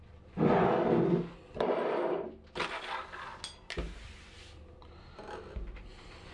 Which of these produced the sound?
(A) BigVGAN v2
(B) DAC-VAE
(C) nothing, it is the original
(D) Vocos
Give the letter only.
C